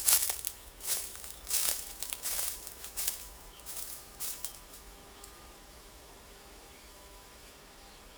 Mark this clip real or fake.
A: fake